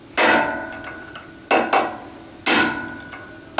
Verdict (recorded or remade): recorded